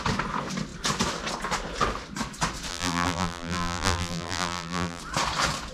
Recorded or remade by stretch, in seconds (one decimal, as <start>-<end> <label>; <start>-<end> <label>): 0.0-2.7 recorded; 2.7-5.0 remade; 5.0-5.7 recorded